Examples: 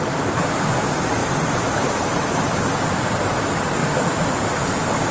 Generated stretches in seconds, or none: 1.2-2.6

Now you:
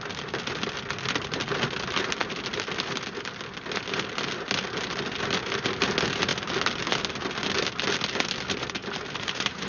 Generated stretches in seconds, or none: 8.8-9.7